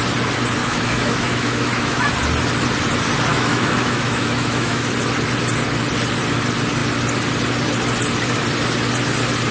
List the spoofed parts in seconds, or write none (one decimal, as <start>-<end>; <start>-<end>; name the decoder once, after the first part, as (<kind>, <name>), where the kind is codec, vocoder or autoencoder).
0.6-2.1 (autoencoder, DAC-VAE); 3.3-4.9